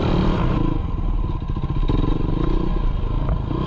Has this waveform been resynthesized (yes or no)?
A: no